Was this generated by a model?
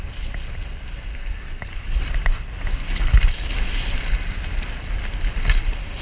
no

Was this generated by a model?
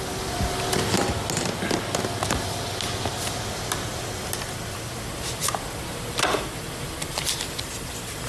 no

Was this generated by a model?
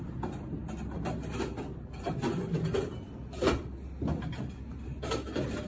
no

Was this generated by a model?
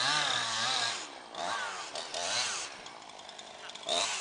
no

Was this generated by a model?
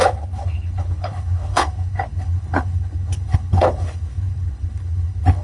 yes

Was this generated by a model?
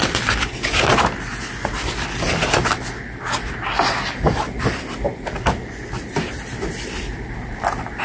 no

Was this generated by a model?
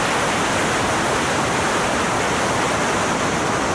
no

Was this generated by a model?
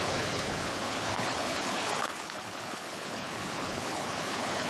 yes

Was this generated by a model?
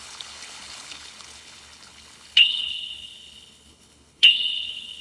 yes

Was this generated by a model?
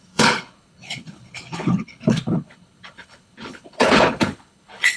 yes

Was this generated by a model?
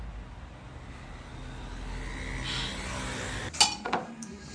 no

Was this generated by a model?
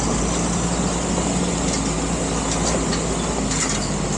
no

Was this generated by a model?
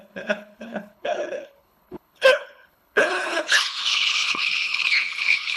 yes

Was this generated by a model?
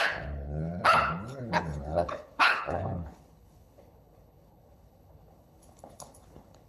yes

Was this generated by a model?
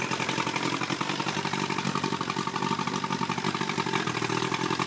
no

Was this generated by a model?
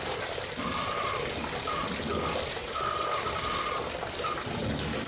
no